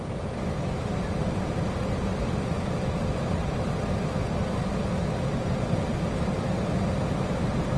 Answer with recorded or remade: recorded